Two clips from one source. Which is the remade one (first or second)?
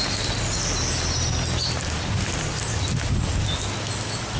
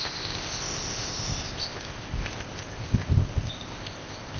second